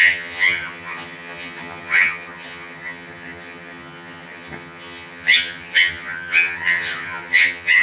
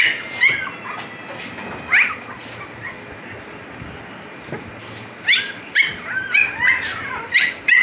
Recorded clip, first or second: second